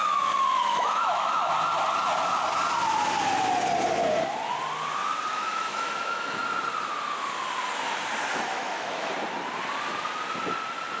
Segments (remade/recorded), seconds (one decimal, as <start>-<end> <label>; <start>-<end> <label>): 0.0-1.5 remade; 1.5-5.3 recorded; 5.3-6.4 remade; 6.4-8.3 recorded; 8.3-9.1 remade; 9.1-11.0 recorded